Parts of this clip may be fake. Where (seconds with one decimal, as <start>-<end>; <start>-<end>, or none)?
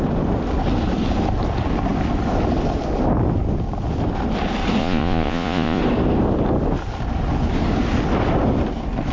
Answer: 4.8-5.8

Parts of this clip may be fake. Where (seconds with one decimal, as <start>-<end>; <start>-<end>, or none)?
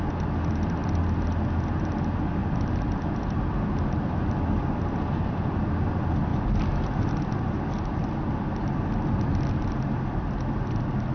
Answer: none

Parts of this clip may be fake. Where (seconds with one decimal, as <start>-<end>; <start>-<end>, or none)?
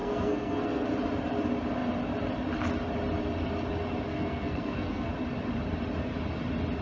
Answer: 0.0-0.9; 4.1-5.1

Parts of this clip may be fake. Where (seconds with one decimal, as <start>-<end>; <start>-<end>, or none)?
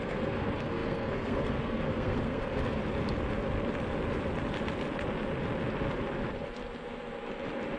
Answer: 0.0-2.8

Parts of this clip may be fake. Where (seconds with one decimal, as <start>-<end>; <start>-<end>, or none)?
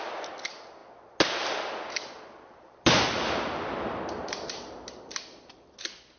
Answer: none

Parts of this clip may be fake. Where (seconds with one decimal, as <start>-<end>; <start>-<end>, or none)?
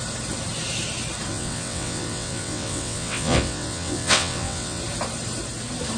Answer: 1.3-4.8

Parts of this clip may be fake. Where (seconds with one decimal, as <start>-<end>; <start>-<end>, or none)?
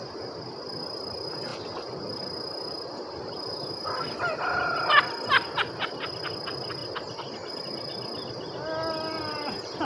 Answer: none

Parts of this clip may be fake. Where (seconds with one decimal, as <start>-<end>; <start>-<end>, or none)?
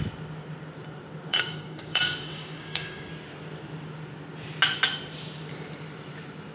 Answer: 1.3-3.1